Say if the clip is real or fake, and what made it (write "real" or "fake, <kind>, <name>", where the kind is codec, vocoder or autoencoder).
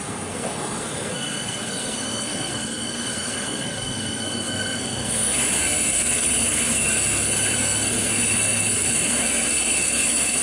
fake, codec, SNAC